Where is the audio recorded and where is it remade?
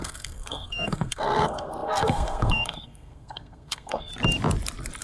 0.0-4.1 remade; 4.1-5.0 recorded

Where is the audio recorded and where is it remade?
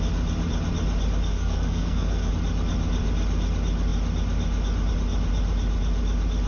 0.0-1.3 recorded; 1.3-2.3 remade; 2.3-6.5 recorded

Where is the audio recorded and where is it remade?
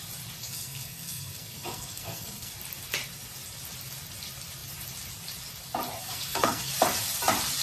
0.0-0.4 recorded; 0.4-2.5 remade; 2.5-6.0 recorded; 6.0-6.7 remade; 6.7-7.6 recorded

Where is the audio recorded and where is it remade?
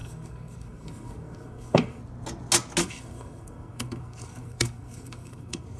0.0-2.0 remade; 2.0-2.8 recorded; 2.8-5.8 remade